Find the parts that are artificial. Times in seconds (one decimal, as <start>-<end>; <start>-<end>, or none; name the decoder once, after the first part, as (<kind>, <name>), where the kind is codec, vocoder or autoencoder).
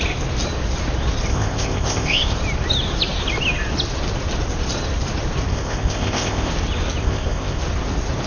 1.3-2.4 (codec, ZipCodec); 5.5-6.5; 7.0-7.6